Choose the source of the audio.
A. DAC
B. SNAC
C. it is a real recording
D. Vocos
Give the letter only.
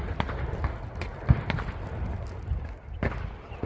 C